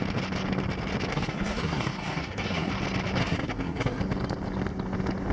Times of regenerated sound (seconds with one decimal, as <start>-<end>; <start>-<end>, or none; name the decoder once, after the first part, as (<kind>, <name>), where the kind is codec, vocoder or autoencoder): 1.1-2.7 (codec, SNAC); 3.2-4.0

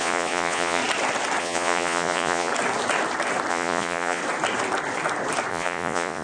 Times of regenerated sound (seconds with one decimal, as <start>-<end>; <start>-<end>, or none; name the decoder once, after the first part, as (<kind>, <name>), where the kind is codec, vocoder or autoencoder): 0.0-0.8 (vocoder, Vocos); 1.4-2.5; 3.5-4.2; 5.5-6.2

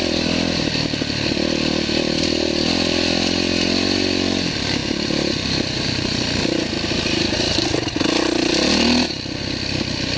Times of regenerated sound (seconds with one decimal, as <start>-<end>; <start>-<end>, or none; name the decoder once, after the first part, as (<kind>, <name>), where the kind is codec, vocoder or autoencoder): none

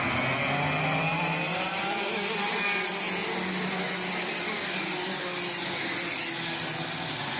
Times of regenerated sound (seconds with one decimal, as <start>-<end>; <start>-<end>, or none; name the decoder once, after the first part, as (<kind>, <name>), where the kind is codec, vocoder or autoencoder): none

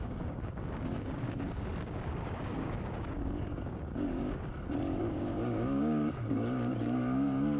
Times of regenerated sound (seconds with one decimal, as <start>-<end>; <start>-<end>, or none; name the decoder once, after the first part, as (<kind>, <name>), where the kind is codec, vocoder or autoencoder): 0.0-4.5 (codec, DAC); 5.0-7.6

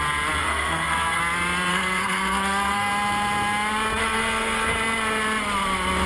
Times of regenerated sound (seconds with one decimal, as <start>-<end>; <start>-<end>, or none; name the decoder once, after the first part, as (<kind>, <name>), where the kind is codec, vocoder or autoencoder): 0.4-1.2 (codec, SNAC); 1.7-2.9; 4.0-4.7

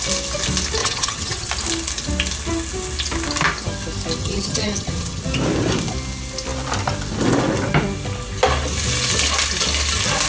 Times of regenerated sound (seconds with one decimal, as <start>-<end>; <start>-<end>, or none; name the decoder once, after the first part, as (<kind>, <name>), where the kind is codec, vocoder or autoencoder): 0.8-1.5 (vocoder, HiFi-GAN); 4.2-5.2

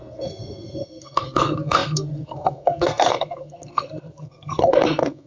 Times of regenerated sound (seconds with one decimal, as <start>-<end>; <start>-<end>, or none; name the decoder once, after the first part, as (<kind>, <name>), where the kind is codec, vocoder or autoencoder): 0.0-5.3 (codec, SNAC)